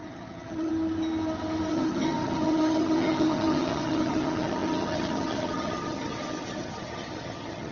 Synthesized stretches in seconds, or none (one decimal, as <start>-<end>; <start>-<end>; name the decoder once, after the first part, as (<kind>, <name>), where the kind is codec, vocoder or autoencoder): 0.0-0.7 (vocoder, HiFi-GAN); 1.7-7.7